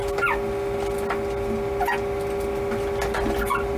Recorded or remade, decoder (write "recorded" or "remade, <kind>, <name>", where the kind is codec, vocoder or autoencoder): recorded